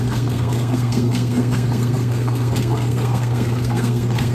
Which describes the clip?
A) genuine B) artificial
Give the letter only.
B